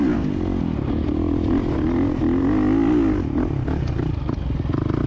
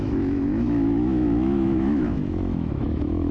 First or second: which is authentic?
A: first